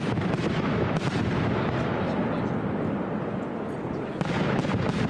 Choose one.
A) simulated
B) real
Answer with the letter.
B